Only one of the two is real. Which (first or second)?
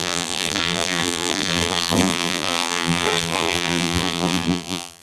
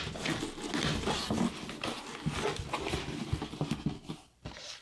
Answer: second